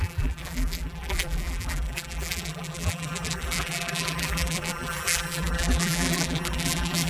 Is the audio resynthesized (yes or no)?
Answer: yes